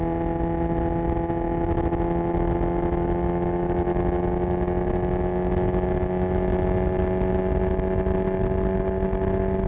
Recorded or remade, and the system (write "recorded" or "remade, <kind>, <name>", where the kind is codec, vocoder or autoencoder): recorded